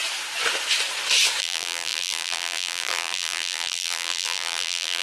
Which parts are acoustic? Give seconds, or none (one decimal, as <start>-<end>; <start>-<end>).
0.0-1.4